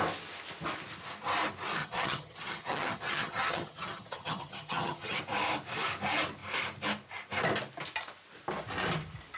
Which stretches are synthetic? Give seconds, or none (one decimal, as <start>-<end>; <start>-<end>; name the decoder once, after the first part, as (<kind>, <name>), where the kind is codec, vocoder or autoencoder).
1.8-5.2 (vocoder, HiFi-GAN)